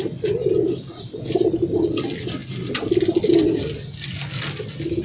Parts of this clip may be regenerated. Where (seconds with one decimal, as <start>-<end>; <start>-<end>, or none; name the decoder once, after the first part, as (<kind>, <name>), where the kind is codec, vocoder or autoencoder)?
none